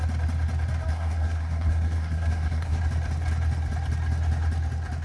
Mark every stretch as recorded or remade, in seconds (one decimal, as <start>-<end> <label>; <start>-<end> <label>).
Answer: 0.0-0.9 recorded; 0.9-2.8 remade; 2.8-5.0 recorded